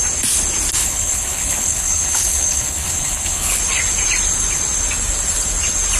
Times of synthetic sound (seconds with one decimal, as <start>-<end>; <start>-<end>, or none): 0.8-3.6